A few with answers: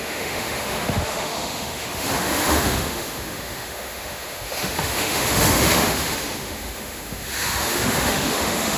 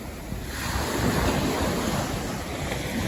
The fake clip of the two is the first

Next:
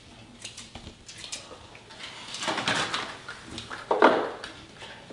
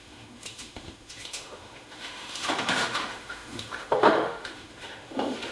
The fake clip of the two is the second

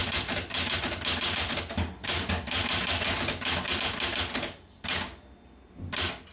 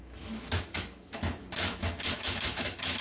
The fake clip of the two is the second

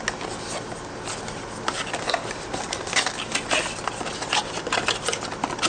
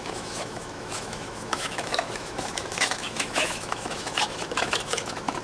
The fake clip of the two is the second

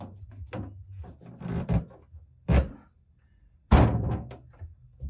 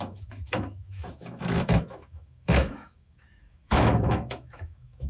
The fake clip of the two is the second